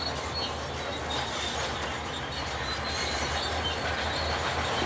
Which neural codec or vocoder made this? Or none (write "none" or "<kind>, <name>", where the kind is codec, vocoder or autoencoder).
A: none